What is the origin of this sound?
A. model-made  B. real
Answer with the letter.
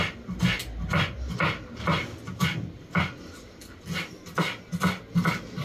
B